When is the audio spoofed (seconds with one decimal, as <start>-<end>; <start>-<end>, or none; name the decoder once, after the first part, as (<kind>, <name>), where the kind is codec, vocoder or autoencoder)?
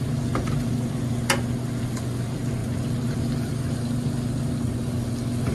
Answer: none